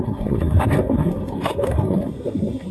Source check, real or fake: fake